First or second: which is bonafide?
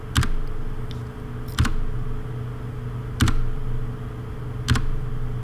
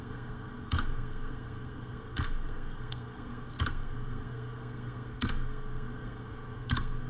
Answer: first